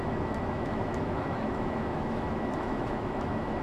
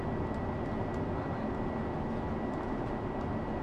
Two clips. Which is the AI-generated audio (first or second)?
first